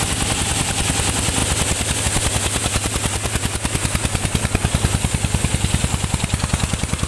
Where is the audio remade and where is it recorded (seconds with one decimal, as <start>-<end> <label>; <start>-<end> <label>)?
0.0-7.1 recorded